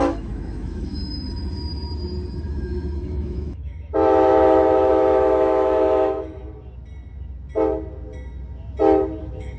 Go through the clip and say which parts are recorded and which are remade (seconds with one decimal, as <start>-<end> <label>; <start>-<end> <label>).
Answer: 0.0-1.0 remade; 1.0-2.6 recorded; 2.6-6.4 remade; 6.4-9.2 recorded; 9.2-9.6 remade